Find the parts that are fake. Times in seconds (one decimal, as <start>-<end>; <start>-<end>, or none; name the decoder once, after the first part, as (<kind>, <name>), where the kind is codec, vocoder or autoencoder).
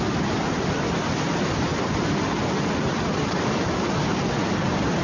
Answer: none